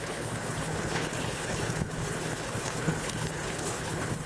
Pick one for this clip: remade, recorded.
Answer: remade